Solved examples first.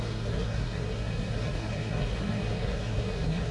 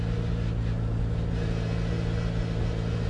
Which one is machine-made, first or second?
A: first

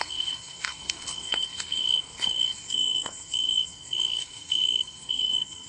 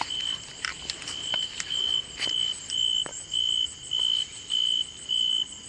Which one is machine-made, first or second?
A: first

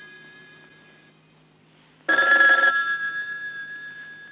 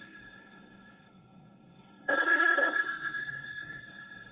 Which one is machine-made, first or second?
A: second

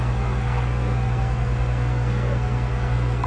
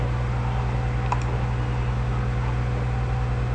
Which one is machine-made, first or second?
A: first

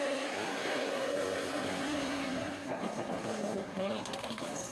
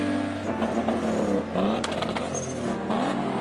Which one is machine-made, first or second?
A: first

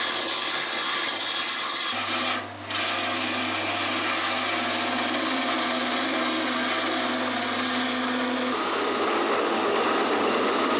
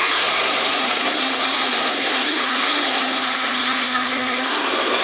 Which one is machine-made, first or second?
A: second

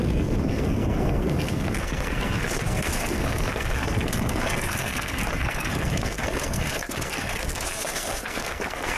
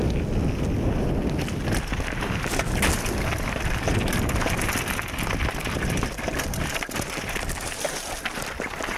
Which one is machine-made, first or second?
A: first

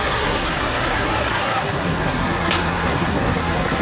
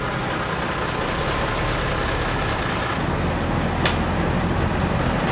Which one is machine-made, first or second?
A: first